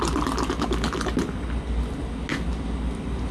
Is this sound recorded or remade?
recorded